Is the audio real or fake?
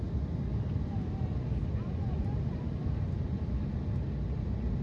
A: real